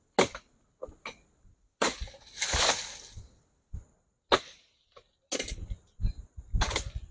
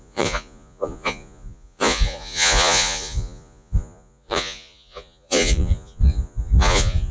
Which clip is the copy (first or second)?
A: second